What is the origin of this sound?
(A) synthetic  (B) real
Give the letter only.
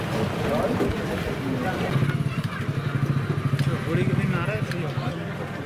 B